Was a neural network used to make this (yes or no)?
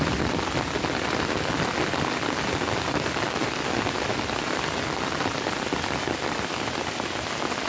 no